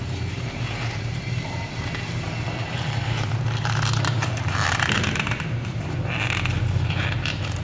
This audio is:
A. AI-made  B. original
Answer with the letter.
A